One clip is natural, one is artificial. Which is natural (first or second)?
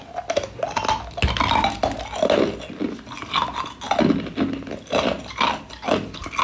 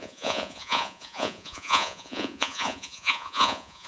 first